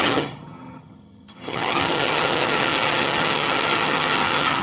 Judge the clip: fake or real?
fake